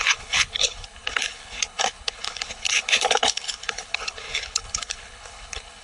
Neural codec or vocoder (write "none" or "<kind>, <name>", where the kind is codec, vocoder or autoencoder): codec, HILCodec